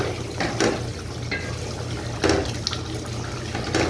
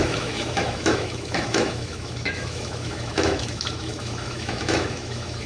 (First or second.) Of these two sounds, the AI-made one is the second